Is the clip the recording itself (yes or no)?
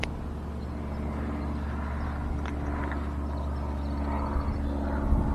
yes